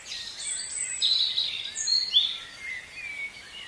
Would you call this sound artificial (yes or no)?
no